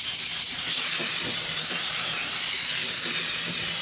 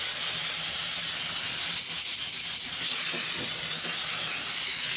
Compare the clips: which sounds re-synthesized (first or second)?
first